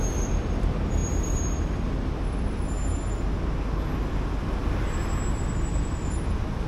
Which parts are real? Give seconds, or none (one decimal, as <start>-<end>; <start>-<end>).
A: 0.0-1.0; 2.7-5.7